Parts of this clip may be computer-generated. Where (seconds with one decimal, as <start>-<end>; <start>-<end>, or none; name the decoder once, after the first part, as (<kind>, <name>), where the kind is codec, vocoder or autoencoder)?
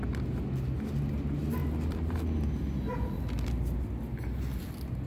none